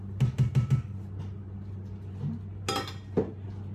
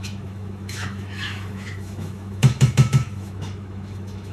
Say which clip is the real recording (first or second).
first